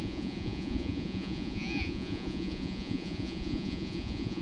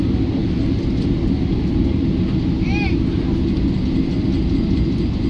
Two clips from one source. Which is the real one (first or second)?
second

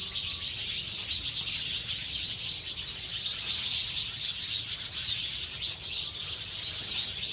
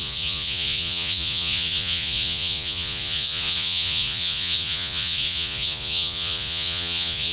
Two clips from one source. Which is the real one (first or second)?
first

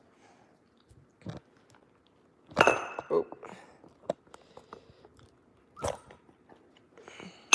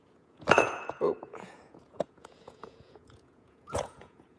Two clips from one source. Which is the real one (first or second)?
first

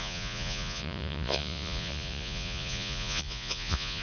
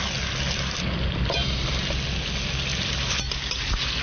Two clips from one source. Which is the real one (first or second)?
second